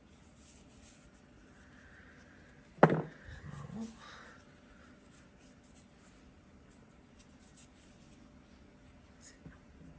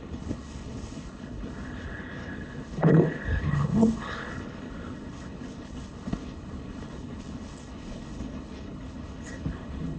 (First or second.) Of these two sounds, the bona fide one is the first